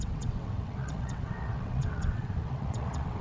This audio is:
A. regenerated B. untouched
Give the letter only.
A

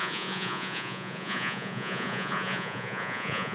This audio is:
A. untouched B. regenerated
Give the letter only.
B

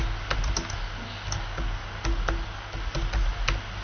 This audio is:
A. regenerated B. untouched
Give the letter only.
B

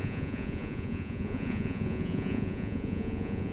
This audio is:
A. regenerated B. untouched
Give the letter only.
A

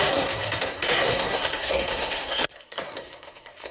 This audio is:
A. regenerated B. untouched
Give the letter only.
A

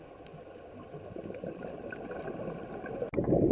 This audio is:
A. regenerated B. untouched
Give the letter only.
B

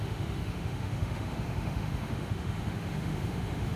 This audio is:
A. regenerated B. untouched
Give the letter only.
A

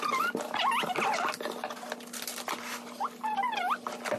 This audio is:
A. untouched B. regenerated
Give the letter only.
A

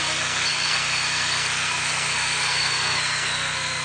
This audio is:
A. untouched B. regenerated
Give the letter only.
B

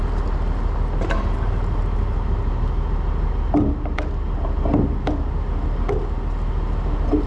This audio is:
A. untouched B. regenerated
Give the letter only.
A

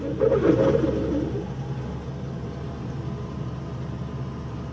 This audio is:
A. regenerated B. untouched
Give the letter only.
B